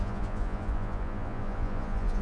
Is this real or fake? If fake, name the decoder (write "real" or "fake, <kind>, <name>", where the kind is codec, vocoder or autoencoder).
fake, vocoder, Vocos